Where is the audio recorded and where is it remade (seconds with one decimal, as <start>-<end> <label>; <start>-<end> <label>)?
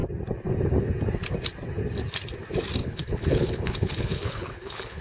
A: 0.0-2.8 recorded; 2.8-5.0 remade